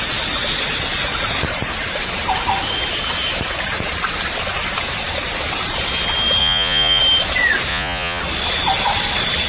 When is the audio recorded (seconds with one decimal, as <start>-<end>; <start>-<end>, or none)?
0.0-6.4; 7.0-7.7; 8.2-9.5